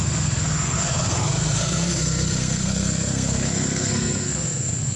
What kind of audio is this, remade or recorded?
remade